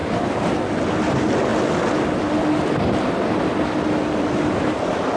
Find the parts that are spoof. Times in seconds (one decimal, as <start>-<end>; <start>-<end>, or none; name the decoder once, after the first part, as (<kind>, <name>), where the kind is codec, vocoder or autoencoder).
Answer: 0.0-0.5 (vocoder, BigVGAN v2)